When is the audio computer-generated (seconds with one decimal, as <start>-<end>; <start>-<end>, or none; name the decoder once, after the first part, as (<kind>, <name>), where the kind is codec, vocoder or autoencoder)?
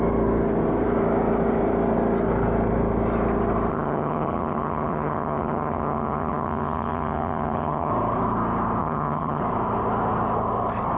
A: 3.7-7.9 (vocoder, HiFi-GAN); 8.8-9.4